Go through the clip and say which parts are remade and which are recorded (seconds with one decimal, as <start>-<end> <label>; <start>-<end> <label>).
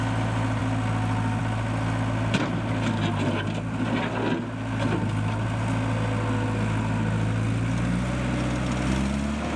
0.0-9.6 recorded